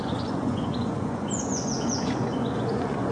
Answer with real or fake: fake